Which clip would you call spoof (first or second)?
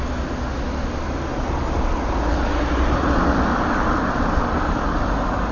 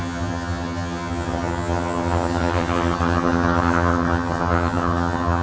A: second